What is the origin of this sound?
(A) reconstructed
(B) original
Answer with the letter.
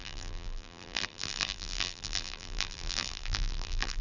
A